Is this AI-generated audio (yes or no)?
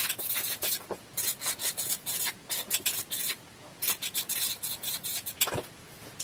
yes